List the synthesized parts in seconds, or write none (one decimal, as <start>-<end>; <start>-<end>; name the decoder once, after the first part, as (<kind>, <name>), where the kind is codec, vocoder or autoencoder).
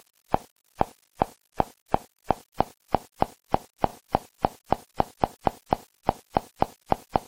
none